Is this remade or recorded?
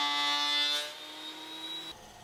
recorded